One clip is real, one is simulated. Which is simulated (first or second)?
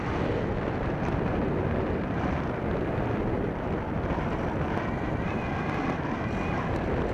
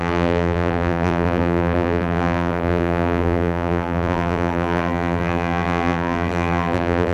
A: second